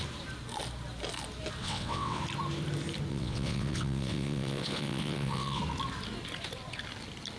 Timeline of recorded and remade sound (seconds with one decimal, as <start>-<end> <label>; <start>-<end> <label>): 0.0-1.6 recorded; 1.6-2.2 remade; 2.2-3.1 recorded; 3.1-5.6 remade; 5.6-7.4 recorded